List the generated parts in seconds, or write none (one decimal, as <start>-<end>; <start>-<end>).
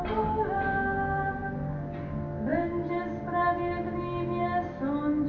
none